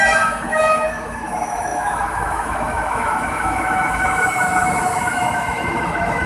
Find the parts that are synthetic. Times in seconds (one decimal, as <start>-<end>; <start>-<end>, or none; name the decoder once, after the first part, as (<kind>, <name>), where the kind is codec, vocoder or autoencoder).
0.0-6.3 (autoencoder, DAC-VAE)